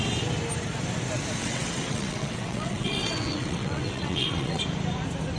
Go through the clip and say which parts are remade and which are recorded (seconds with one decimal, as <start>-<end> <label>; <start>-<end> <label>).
0.0-1.4 recorded; 1.4-4.6 remade; 4.6-5.4 recorded